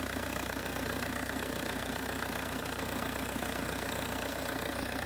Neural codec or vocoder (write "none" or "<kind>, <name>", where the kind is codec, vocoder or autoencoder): codec, SNAC